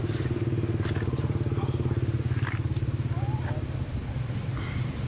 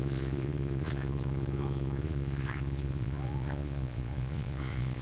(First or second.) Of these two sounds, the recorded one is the first